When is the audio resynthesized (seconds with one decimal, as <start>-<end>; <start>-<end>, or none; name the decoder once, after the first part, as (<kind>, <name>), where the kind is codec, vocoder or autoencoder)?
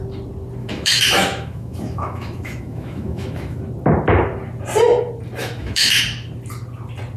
0.6-3.6 (autoencoder, DAC-VAE); 5.4-6.0